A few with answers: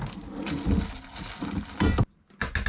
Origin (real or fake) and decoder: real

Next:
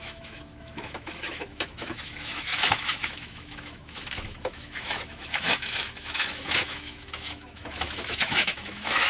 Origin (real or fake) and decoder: fake, autoencoder, DAC-VAE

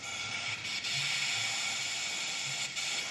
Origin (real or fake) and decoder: real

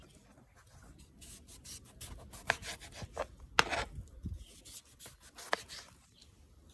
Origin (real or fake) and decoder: real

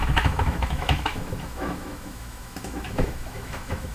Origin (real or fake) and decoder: fake, autoencoder, DAC-VAE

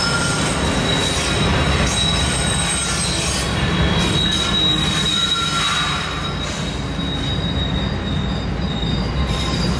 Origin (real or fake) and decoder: real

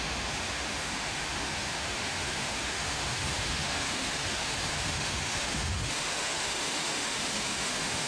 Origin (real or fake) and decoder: fake, autoencoder, DAC-VAE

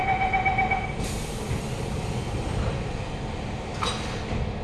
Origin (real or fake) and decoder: real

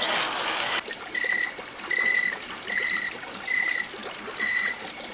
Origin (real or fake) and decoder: real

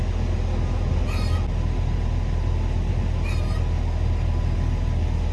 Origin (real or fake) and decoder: real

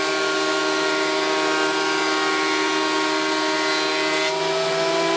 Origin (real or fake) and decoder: real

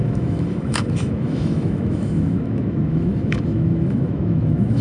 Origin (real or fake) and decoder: fake, autoencoder, DAC-VAE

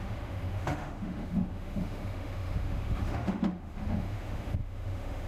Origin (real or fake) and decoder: fake, autoencoder, DAC-VAE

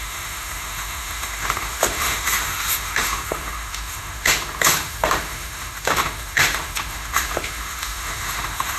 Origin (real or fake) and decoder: fake, autoencoder, DAC-VAE